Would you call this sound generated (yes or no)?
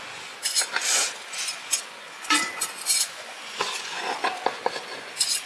yes